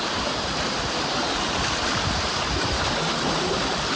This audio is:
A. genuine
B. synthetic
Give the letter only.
A